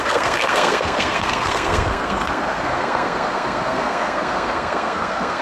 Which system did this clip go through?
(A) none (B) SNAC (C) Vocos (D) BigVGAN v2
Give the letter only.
B